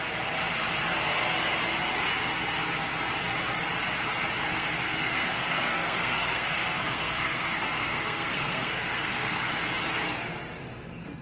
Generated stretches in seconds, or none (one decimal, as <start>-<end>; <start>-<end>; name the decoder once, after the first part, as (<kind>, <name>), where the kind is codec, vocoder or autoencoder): 4.5-9.5 (codec, SNAC)